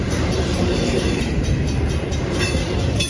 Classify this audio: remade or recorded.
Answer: remade